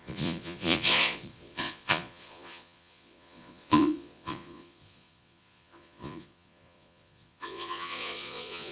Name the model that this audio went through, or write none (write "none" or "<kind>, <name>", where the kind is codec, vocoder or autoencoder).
vocoder, Vocos